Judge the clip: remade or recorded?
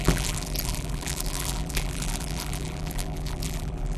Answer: remade